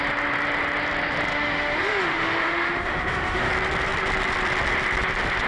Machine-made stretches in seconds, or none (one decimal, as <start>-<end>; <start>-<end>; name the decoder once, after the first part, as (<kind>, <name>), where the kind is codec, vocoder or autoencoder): 1.3-3.5 (autoencoder, DAC-VAE)